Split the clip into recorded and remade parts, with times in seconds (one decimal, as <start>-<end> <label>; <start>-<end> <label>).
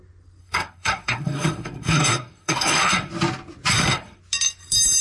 0.0-0.4 recorded; 0.4-3.1 remade; 3.1-3.7 recorded; 3.7-4.2 remade; 4.2-5.0 recorded